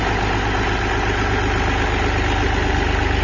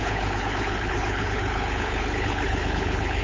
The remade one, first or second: second